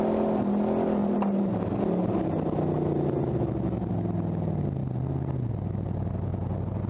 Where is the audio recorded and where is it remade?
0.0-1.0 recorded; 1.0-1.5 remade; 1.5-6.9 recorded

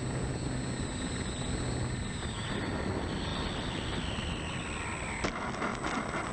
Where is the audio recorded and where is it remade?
0.0-6.3 recorded

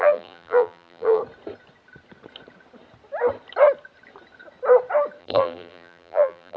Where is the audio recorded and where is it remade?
0.0-1.2 remade; 1.2-5.2 recorded; 5.2-6.6 remade

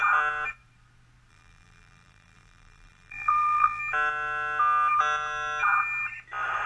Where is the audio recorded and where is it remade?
0.0-1.3 recorded; 1.3-3.8 remade; 3.8-6.7 recorded

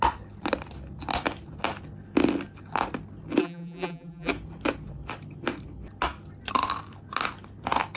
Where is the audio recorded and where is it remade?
0.0-3.4 recorded; 3.4-4.3 remade; 4.3-8.0 recorded

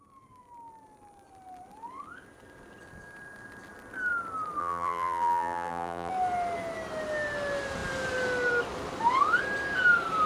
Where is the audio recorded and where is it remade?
0.0-4.6 recorded; 4.6-6.1 remade; 6.1-10.3 recorded

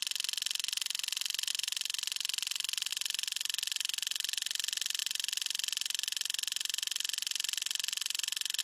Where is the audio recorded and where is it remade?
0.0-8.6 recorded

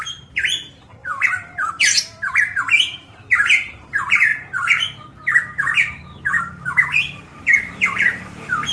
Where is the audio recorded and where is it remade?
0.0-4.3 remade; 4.3-6.4 recorded; 6.4-8.7 remade